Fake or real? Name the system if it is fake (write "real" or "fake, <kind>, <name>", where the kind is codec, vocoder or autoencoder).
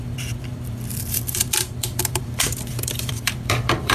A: fake, vocoder, BigVGAN v2